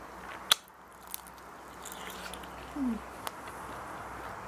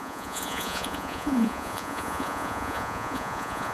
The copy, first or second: second